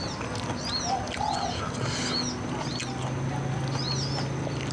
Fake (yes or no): no